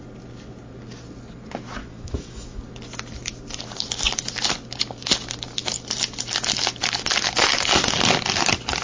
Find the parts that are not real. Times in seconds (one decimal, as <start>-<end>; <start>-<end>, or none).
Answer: 1.8-2.6

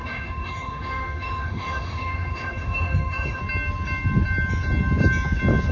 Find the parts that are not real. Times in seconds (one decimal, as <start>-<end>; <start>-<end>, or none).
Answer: 0.0-3.4

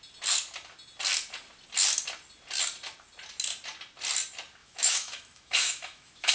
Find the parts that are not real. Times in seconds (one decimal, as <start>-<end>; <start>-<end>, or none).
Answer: 4.6-6.3

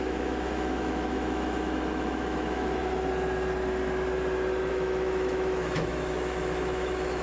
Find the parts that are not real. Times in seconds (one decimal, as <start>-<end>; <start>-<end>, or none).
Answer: 0.0-2.8; 4.7-7.2

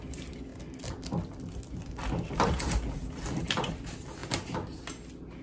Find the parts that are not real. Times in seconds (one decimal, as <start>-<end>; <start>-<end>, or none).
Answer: none

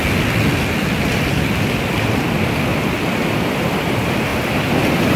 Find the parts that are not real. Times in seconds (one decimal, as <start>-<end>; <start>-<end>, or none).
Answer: none

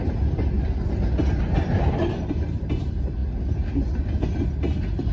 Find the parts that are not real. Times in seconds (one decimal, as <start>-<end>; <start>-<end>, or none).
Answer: none

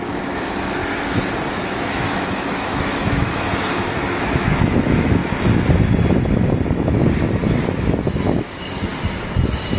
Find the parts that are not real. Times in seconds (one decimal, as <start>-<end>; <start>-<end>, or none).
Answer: 0.0-0.8; 1.5-5.2; 7.8-8.9